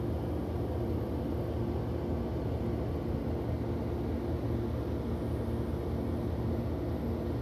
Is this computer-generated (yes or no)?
no